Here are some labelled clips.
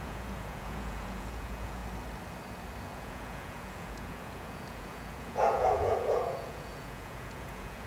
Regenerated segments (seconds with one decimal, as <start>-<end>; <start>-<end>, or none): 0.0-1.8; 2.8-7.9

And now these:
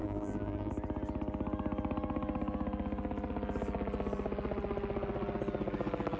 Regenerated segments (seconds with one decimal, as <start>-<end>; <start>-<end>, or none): 0.0-0.7

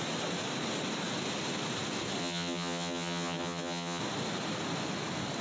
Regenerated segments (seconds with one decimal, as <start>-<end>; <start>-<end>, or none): 2.2-4.0

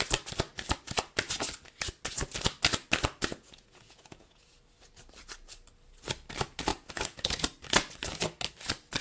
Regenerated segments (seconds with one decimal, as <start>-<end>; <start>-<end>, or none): 3.3-4.5; 6.7-7.4

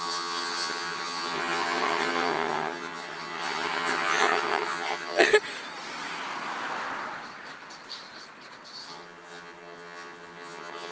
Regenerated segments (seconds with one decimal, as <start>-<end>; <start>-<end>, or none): 0.0-5.3; 8.9-10.9